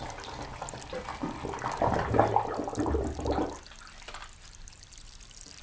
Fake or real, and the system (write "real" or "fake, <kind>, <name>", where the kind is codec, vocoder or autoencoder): real